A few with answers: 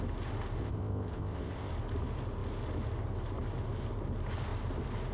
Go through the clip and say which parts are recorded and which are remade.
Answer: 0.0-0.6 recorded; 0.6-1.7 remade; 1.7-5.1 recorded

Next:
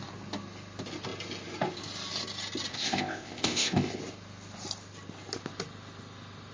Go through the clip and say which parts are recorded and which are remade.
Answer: 0.0-2.7 recorded; 2.7-4.0 remade; 4.0-6.5 recorded